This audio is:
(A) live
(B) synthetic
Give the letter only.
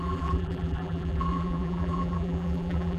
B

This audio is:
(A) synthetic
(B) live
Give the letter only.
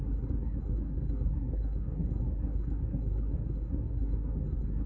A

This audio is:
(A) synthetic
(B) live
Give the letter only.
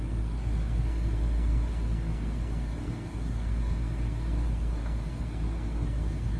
A